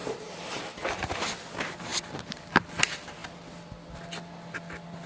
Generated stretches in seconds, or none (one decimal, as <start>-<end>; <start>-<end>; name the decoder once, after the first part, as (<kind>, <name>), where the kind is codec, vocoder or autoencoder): 0.0-1.0 (vocoder, BigVGAN v2)